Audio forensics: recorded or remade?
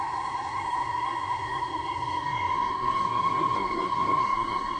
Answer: remade